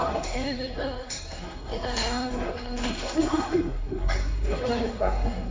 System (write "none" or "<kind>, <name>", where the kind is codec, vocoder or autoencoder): codec, SNAC